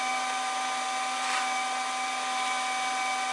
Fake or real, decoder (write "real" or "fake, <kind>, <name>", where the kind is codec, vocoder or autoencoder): real